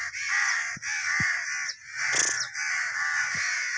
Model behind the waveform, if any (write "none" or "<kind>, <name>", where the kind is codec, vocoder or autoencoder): none